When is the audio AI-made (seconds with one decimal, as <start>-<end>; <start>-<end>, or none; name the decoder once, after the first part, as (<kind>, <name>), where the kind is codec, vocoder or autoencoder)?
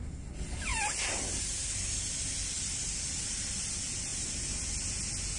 0.7-1.4 (vocoder, BigVGAN v2); 2.6-3.4; 4.1-5.0